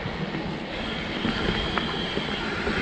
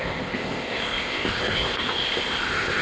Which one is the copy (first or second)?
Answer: second